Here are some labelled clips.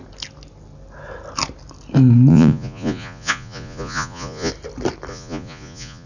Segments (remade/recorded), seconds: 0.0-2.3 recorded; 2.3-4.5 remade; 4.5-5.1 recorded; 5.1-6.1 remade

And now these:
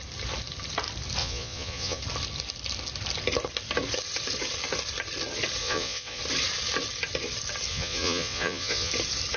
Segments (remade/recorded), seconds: 0.0-1.2 recorded; 1.2-2.0 remade; 2.0-5.6 recorded; 5.6-6.2 remade; 6.2-7.7 recorded; 7.7-8.9 remade; 8.9-9.4 recorded

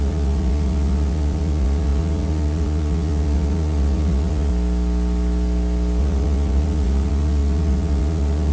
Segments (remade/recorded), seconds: 0.0-4.5 remade; 4.5-6.0 recorded; 6.0-8.5 remade